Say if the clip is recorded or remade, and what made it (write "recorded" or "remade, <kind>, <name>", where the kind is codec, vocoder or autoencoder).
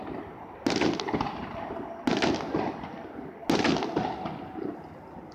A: recorded